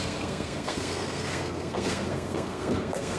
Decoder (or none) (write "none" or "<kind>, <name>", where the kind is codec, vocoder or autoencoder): codec, SNAC